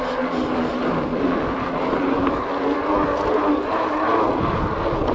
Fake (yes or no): no